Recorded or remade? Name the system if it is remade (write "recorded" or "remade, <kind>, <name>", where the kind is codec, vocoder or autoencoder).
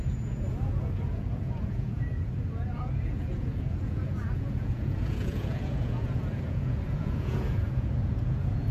remade, vocoder, Vocos